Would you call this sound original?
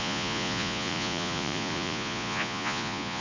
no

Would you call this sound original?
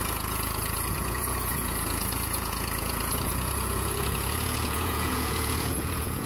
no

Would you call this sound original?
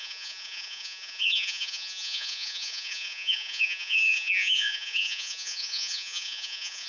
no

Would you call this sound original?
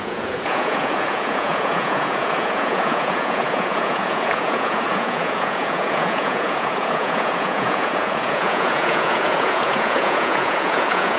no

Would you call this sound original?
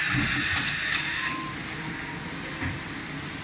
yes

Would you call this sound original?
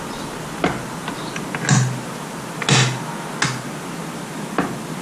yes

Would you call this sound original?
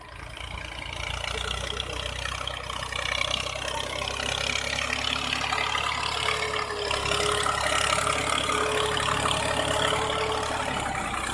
yes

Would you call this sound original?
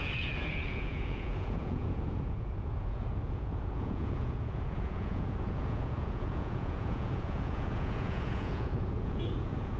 no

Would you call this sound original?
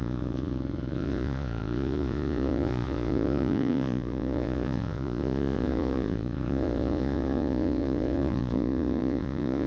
no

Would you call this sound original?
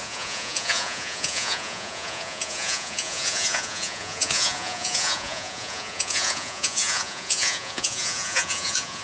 no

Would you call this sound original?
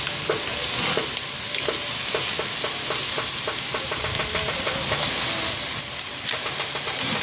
yes